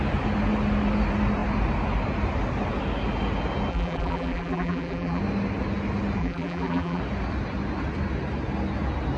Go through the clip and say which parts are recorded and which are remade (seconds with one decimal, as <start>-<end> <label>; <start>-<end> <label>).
0.0-3.7 recorded; 3.7-5.2 remade; 5.2-6.2 recorded; 6.2-7.0 remade; 7.0-9.2 recorded

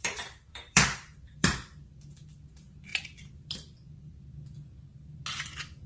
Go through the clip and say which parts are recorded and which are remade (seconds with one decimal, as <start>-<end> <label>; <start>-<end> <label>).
0.0-2.5 remade; 2.5-2.9 recorded; 2.9-4.2 remade; 4.2-5.9 recorded

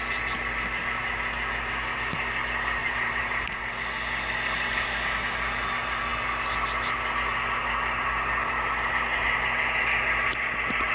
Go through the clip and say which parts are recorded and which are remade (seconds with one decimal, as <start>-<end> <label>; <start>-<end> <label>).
0.0-2.8 recorded; 2.8-3.6 remade; 3.6-10.9 recorded

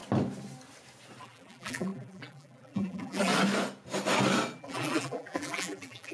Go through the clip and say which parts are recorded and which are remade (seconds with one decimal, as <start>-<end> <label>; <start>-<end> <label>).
0.0-1.2 recorded; 1.2-3.3 remade; 3.3-4.6 recorded; 4.6-6.1 remade

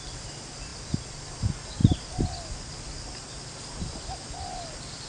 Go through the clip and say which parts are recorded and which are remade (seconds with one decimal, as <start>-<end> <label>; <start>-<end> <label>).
0.0-5.1 recorded

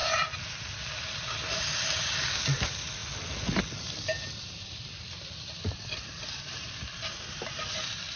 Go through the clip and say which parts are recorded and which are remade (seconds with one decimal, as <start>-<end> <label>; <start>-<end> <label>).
0.0-0.6 recorded; 0.6-3.0 remade; 3.0-3.6 recorded; 3.6-8.2 remade

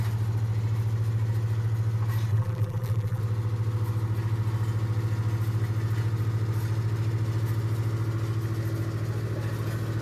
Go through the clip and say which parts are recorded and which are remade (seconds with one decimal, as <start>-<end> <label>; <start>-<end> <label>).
0.0-2.3 recorded; 2.3-3.2 remade; 3.2-10.0 recorded

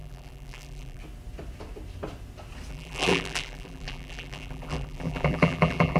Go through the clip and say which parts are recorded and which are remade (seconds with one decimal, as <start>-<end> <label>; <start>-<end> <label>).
0.0-1.0 remade; 1.0-2.7 recorded; 2.7-6.0 remade